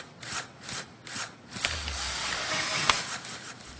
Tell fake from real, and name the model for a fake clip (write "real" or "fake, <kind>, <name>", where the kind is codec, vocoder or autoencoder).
real